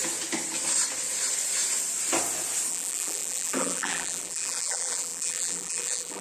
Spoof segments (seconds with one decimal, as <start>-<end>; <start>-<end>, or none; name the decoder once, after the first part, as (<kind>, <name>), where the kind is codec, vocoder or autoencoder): 2.7-6.2 (vocoder, BigVGAN v2)